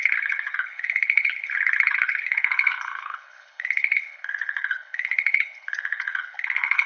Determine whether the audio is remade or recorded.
remade